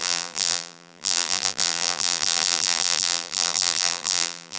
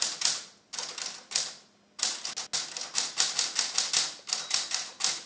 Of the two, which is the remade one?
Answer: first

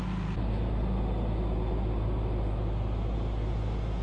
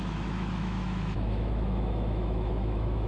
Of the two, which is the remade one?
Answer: second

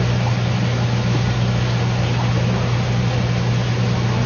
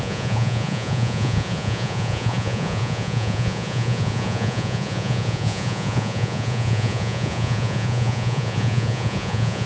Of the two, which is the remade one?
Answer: second